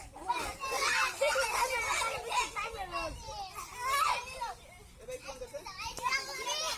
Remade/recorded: recorded